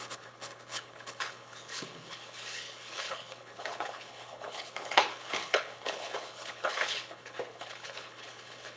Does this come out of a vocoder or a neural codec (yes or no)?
yes